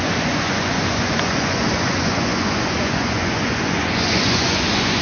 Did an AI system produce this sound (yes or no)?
yes